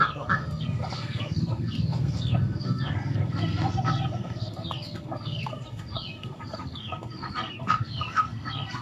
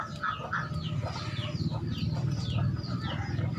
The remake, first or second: first